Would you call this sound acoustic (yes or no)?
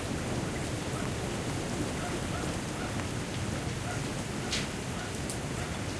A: yes